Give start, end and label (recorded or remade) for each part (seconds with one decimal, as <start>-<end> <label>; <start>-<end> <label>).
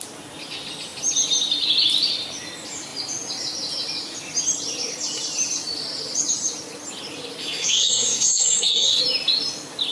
0.0-7.4 recorded; 7.4-9.0 remade; 9.0-9.9 recorded